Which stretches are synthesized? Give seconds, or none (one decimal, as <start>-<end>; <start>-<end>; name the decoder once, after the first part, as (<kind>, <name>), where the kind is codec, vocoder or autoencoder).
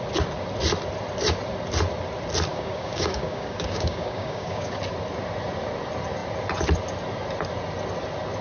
2.5-4.8 (codec, DAC)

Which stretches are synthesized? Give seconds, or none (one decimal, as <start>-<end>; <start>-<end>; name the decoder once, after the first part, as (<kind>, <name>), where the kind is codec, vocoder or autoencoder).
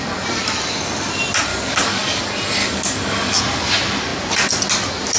1.5-2.2 (codec, DAC); 2.6-3.4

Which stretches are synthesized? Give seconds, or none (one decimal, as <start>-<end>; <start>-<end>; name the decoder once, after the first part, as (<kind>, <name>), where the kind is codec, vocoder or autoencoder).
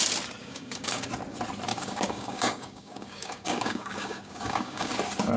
0.4-1.1 (codec, DAC); 1.7-4.9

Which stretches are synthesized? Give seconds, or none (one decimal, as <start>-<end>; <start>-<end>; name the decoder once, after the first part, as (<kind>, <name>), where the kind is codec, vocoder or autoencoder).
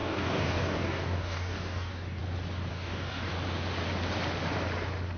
0.0-2.2 (codec, DAC); 2.7-3.3